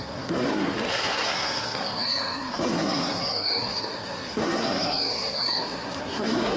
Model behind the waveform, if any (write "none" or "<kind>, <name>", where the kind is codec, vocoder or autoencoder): codec, SNAC